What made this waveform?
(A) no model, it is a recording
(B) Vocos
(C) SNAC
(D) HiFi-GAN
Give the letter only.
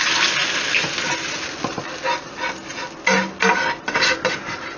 A